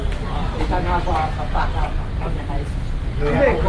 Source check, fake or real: real